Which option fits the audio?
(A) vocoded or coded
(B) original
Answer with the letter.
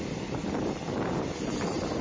B